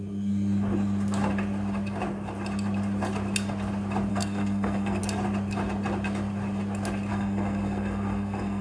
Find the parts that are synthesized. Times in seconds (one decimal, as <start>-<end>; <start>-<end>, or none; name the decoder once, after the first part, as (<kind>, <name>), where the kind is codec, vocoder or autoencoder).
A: 4.1-5.0 (codec, SNAC); 7.1-8.6